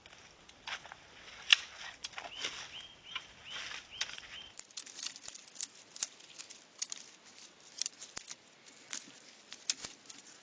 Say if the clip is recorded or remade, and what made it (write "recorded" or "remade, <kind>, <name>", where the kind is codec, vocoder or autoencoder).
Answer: recorded